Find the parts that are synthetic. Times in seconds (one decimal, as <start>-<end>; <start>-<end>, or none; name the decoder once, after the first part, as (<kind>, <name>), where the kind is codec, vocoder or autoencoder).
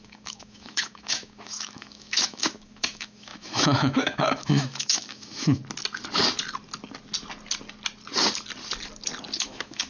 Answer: 0.0-5.6 (autoencoder, DAC-VAE); 9.4-9.9